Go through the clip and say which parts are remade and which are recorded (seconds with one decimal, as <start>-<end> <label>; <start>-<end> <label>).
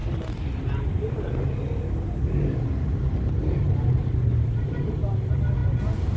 0.0-6.2 recorded